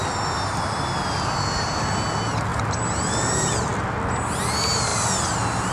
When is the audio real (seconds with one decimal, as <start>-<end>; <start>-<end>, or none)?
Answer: 0.0-2.5; 3.3-5.7